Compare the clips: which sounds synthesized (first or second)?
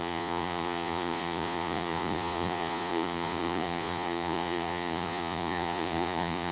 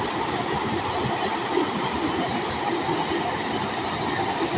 first